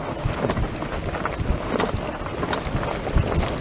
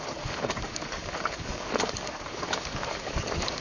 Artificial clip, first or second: second